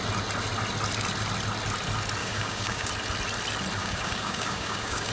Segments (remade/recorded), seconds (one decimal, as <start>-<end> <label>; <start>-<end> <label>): 0.0-2.2 recorded; 2.2-2.9 remade; 2.9-3.8 recorded; 3.8-5.1 remade